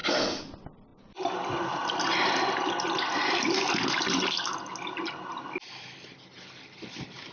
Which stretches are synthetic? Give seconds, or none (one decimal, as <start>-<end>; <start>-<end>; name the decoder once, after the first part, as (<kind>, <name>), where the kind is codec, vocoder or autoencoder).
none